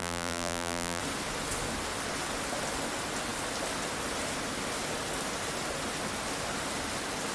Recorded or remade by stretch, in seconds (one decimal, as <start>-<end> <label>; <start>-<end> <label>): 0.0-1.0 remade; 1.0-7.3 recorded